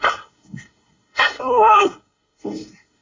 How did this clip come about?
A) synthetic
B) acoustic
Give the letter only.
A